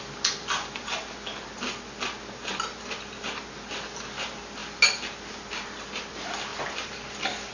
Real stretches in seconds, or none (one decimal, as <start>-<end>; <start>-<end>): 0.0-7.5